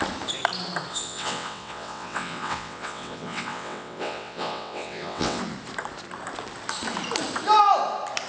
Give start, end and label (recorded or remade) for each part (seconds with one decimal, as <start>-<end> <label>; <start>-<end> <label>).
0.0-0.9 recorded; 0.9-5.4 remade; 5.4-8.3 recorded